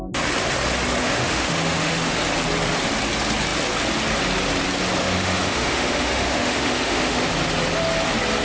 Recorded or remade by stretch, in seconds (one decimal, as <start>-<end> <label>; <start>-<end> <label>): 0.0-1.0 recorded; 1.0-2.2 remade; 2.2-5.0 recorded; 5.0-7.3 remade; 7.3-8.4 recorded